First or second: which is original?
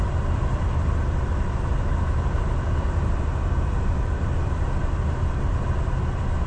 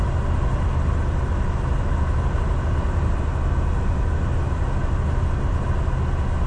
second